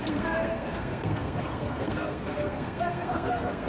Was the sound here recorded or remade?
remade